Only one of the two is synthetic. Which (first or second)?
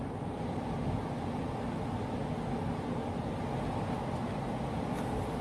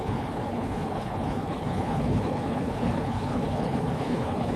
second